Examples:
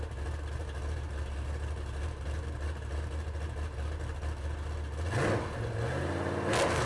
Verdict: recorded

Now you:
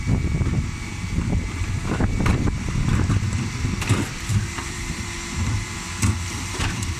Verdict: remade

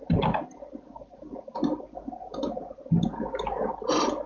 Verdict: recorded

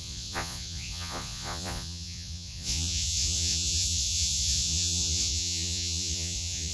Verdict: remade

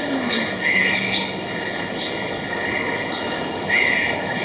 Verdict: remade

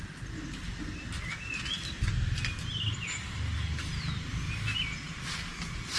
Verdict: recorded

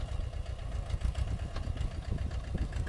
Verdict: recorded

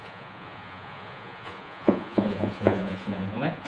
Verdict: remade